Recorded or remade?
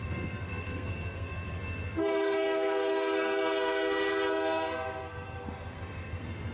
remade